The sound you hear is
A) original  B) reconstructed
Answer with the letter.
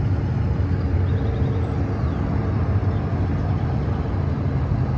A